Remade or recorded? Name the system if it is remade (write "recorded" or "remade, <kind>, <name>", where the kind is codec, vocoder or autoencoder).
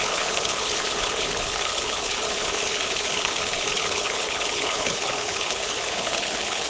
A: remade, codec, HILCodec